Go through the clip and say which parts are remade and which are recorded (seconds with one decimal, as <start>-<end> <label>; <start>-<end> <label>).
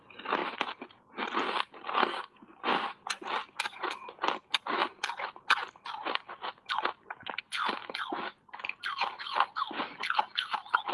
0.0-2.0 recorded; 2.0-2.6 remade; 2.6-10.9 recorded